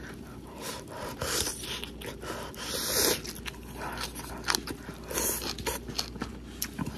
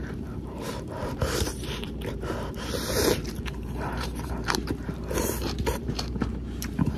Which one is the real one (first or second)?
first